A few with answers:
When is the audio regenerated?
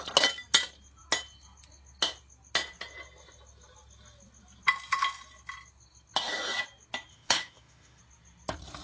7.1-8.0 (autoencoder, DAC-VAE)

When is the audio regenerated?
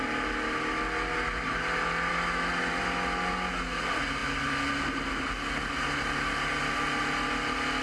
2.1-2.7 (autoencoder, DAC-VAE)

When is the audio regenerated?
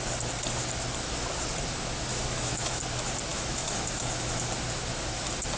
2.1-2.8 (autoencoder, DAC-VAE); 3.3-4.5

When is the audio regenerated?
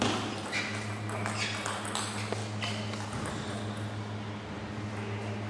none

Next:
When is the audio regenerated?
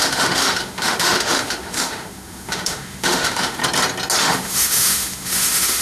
0.0-3.6 (autoencoder, DAC-VAE); 4.2-5.8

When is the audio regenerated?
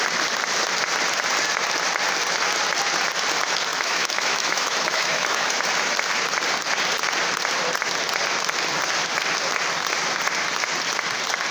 3.7-5.6 (autoencoder, DAC-VAE)